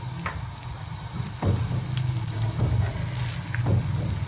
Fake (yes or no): no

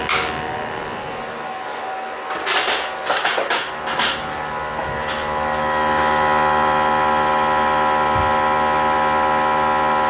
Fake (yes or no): no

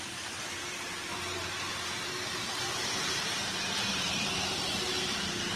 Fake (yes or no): yes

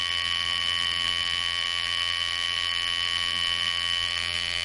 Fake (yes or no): yes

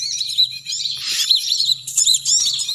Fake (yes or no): yes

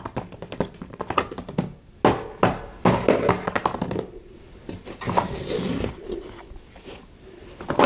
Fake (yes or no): no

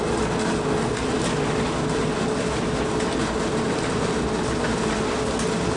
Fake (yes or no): no